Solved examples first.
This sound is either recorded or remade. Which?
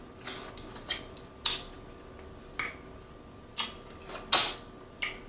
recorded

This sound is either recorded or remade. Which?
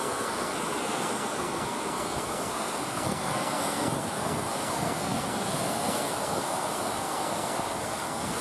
remade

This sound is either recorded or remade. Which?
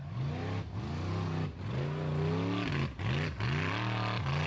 recorded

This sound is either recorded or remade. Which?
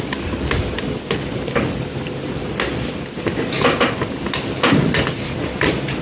recorded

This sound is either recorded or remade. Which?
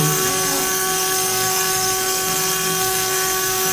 remade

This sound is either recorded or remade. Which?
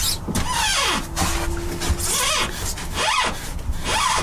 recorded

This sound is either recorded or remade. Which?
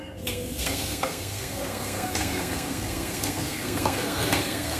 remade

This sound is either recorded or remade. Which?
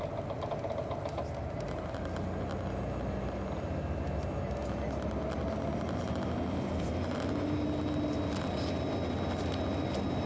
recorded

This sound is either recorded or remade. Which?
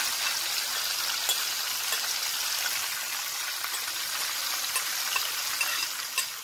recorded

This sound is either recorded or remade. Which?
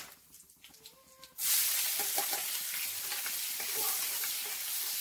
recorded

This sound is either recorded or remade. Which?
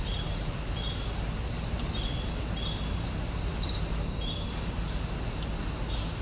recorded